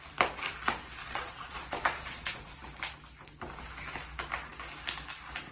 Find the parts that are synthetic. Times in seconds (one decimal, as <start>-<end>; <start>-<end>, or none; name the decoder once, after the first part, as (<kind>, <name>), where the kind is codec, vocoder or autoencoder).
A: 1.0-2.6 (vocoder, Vocos)